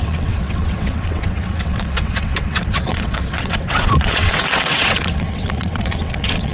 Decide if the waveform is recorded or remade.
remade